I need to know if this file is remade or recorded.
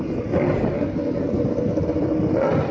recorded